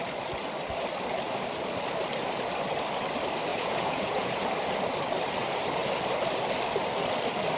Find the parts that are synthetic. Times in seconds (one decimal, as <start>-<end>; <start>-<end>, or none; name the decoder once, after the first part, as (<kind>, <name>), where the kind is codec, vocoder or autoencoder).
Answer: 3.5-4.5 (vocoder, Vocos)